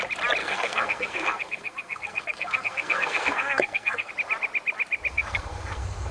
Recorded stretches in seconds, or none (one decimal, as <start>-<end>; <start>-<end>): 0.0-0.4; 4.1-5.1